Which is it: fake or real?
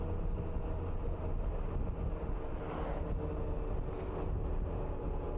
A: real